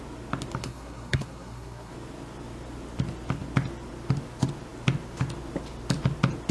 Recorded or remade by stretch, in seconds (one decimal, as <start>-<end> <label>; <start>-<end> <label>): 0.0-0.6 recorded; 0.6-1.9 remade; 1.9-6.5 recorded